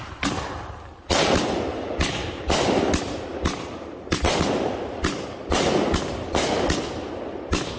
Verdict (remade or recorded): recorded